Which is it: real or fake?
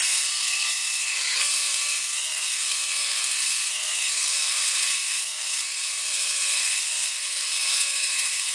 fake